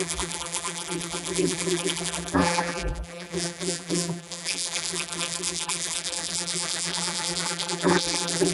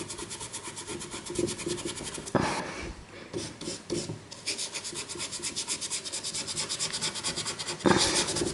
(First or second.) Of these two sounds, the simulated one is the first